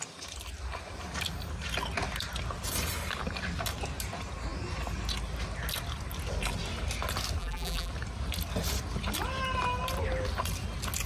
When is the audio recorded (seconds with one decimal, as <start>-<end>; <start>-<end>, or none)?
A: 0.0-7.4; 7.9-11.1